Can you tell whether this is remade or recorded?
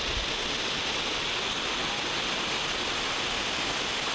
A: recorded